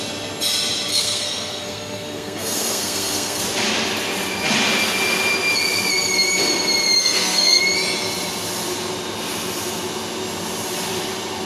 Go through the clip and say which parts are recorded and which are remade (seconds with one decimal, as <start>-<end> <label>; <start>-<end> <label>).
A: 0.0-0.9 recorded; 0.9-3.4 remade; 3.4-7.0 recorded; 7.0-7.6 remade; 7.6-11.5 recorded

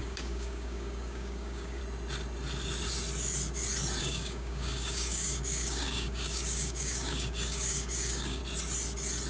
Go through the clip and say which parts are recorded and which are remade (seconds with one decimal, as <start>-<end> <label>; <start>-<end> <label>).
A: 0.0-1.8 remade; 1.8-4.0 recorded; 4.0-8.4 remade; 8.4-9.3 recorded

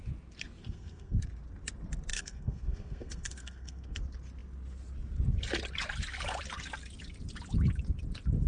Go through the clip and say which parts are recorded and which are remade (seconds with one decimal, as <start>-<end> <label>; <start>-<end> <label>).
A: 0.0-0.6 recorded; 0.6-1.2 remade; 1.2-2.1 recorded; 2.1-4.0 remade; 4.0-8.5 recorded

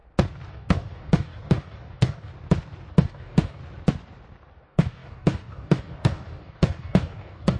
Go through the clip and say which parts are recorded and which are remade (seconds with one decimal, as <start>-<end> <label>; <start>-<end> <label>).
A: 0.0-0.5 recorded; 0.5-2.3 remade; 2.3-2.9 recorded; 2.9-3.6 remade; 3.6-4.6 recorded; 4.6-7.6 remade

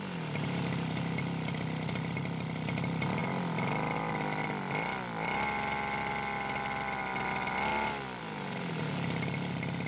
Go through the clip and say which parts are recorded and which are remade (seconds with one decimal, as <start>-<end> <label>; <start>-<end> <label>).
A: 0.0-7.7 recorded; 7.7-8.2 remade; 8.2-9.9 recorded

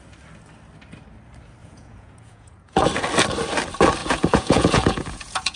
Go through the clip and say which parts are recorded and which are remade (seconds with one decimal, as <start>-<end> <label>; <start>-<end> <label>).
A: 0.0-1.6 recorded; 1.6-2.9 remade; 2.9-4.0 recorded; 4.0-5.6 remade

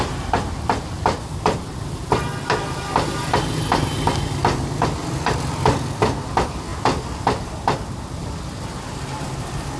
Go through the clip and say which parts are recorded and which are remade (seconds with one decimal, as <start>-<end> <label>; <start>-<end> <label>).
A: 0.0-9.8 recorded